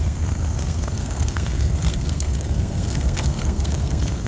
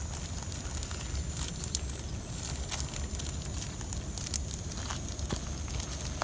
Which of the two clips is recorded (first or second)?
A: second